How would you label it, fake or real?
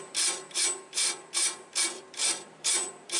fake